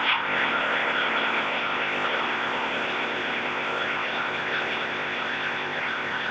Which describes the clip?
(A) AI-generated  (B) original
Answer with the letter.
A